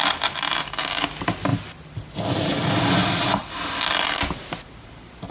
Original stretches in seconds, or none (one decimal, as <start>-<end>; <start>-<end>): 0.0-5.3